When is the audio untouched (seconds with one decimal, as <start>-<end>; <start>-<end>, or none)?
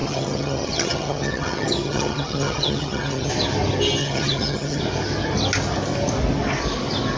3.3-4.0; 4.8-7.2